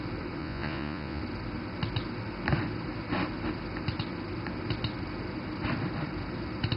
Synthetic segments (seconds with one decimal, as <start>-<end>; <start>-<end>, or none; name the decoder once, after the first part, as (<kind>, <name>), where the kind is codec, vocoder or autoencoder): 0.4-1.2 (vocoder, Vocos)